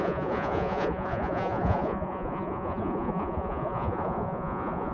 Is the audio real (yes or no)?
no